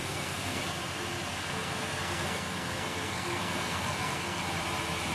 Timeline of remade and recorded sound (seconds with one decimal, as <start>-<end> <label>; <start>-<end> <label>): 0.0-0.6 remade; 0.6-1.3 recorded; 1.3-4.4 remade; 4.4-5.1 recorded